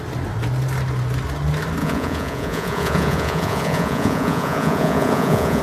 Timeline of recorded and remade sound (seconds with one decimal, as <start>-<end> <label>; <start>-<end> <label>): 0.0-1.8 recorded; 1.8-5.6 remade